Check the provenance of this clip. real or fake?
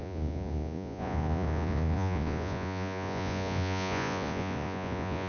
fake